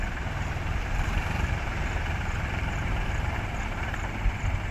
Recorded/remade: remade